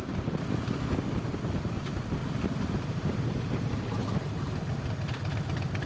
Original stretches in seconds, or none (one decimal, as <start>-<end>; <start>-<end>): 0.0-2.2